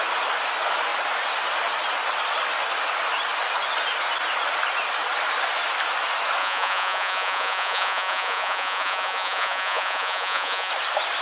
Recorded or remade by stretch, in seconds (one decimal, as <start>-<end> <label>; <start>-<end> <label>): 0.0-6.4 recorded; 6.4-10.7 remade; 10.7-11.2 recorded